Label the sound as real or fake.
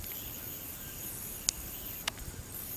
real